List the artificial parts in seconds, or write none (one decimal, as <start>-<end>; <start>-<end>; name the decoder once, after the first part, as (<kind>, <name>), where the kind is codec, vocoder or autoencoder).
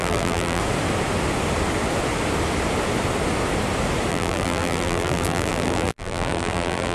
0.0-0.6 (vocoder, BigVGAN v2); 4.1-6.9